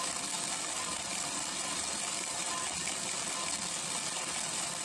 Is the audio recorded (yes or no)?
yes